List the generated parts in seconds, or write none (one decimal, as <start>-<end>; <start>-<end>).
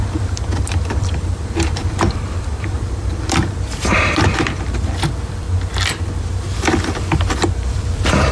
0.0-8.3